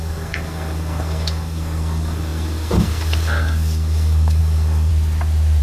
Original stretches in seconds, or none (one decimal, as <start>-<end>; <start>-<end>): 4.9-5.6